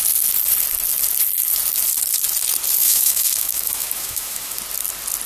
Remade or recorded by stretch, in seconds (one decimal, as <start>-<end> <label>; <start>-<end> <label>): 0.0-2.8 recorded; 2.8-4.6 remade; 4.6-5.3 recorded